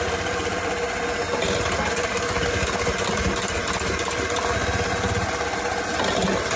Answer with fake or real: real